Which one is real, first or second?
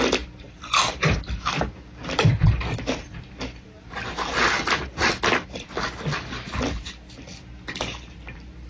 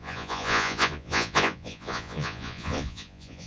first